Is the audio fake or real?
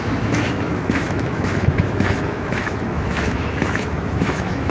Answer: fake